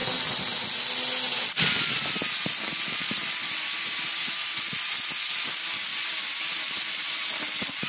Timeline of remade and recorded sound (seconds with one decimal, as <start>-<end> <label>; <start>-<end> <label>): 0.0-7.9 recorded